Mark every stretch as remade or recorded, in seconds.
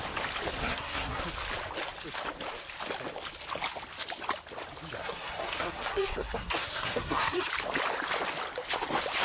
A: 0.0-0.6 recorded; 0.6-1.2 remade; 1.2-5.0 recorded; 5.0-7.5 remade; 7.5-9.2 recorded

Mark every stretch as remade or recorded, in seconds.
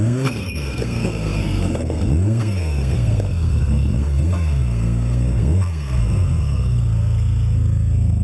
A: 0.0-8.2 remade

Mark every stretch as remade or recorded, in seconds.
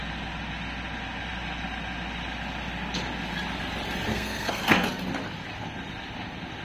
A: 0.0-4.1 recorded; 4.1-5.0 remade; 5.0-6.6 recorded